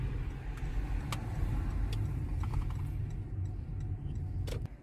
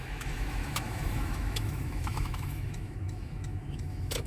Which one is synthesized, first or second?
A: second